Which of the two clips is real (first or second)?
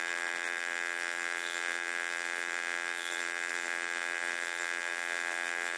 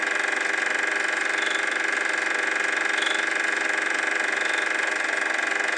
second